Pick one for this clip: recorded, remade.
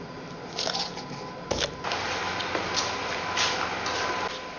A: recorded